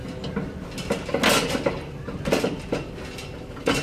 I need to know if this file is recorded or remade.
recorded